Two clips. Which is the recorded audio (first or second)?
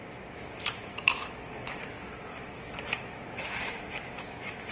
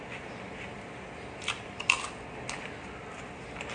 second